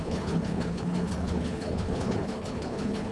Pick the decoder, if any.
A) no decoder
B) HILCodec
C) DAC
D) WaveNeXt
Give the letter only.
B